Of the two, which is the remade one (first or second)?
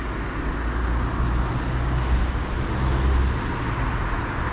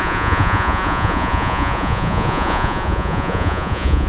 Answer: second